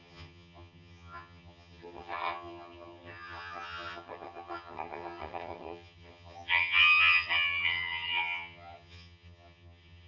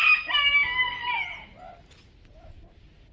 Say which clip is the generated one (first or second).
first